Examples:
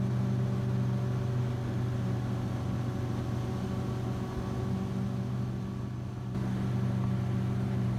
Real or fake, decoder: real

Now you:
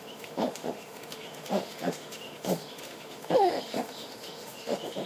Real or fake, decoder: fake, autoencoder, DAC-VAE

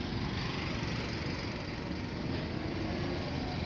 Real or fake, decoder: real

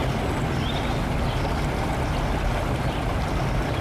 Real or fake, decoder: real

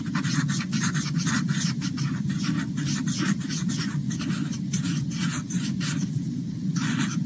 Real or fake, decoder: real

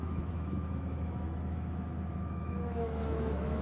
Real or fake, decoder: fake, autoencoder, DAC-VAE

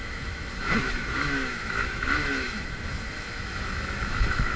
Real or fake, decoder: fake, autoencoder, DAC-VAE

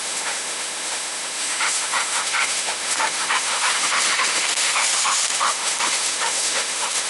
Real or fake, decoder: fake, autoencoder, DAC-VAE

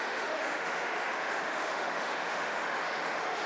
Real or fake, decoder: fake, autoencoder, DAC-VAE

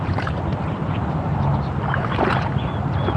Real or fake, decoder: real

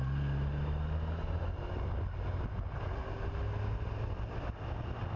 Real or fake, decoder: real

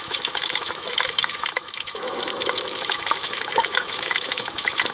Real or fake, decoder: fake, autoencoder, DAC-VAE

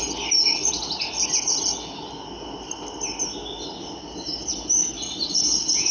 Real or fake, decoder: real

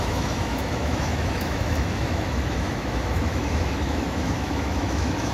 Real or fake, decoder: fake, autoencoder, DAC-VAE